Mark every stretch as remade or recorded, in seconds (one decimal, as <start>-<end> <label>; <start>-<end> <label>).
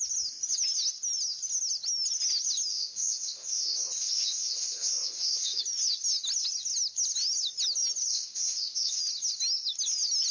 0.0-2.7 recorded; 2.7-5.6 remade; 5.6-8.1 recorded; 8.1-9.0 remade; 9.0-10.3 recorded